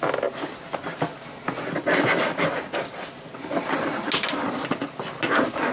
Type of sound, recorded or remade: recorded